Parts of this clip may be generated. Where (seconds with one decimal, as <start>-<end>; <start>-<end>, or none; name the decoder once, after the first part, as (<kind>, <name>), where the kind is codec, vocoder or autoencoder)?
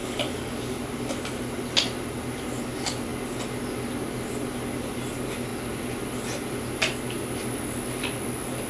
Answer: 0.0-0.8 (codec, DAC)